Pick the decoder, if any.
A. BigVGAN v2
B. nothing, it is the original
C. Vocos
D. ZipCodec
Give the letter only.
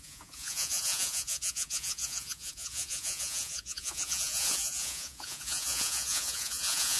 C